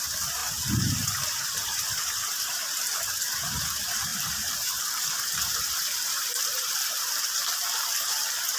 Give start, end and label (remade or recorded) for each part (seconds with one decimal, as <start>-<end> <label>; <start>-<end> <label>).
0.0-8.6 remade